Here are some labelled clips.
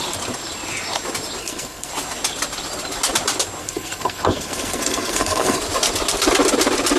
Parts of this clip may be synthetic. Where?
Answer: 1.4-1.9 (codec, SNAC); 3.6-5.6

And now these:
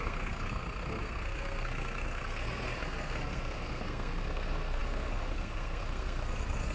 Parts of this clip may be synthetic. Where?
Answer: 0.0-6.7 (codec, SNAC)

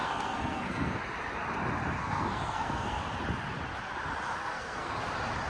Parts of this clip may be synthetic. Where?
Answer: 0.0-1.0 (codec, SNAC); 2.0-3.0; 4.4-5.0

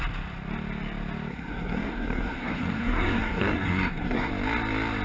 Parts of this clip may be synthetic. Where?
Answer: 1.3-4.3 (codec, SNAC)

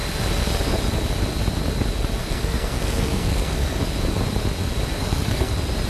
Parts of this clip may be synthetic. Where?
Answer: 2.2-3.8 (codec, SNAC); 5.0-5.5

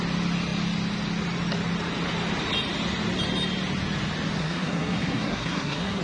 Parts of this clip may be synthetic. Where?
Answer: 4.4-6.0 (codec, SNAC)

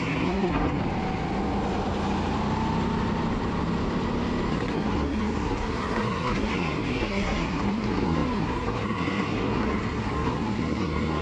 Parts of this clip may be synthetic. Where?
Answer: 0.0-0.8 (codec, SNAC); 4.5-11.2